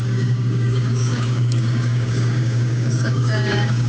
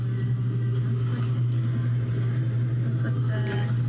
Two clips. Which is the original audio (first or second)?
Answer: second